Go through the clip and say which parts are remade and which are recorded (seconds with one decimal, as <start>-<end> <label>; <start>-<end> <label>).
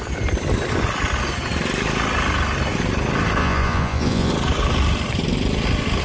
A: 0.0-3.4 recorded; 3.4-4.3 remade; 4.3-6.0 recorded